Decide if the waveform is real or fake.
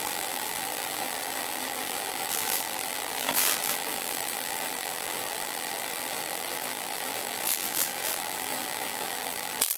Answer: fake